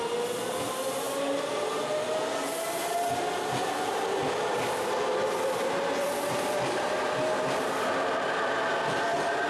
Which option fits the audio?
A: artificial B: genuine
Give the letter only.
B